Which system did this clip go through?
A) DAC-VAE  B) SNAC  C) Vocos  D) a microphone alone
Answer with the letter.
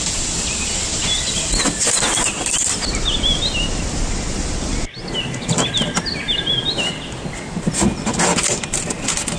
D